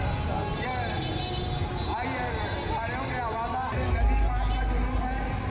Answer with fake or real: real